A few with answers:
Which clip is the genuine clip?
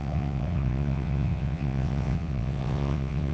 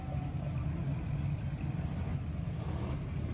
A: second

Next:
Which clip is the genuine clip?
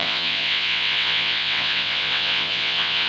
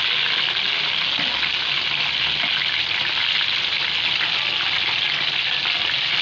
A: second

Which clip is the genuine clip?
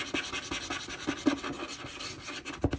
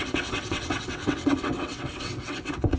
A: first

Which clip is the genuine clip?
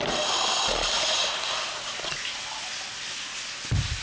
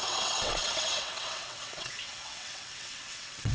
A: first